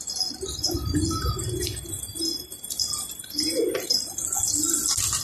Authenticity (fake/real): real